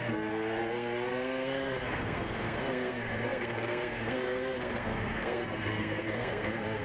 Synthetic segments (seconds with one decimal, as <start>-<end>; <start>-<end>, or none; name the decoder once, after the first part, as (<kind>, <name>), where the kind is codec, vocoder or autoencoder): 0.0-6.8 (codec, SNAC)